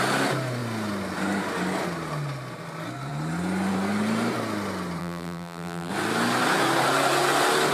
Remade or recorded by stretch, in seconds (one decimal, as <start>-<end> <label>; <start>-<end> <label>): 0.0-5.0 recorded; 5.0-5.9 remade; 5.9-7.7 recorded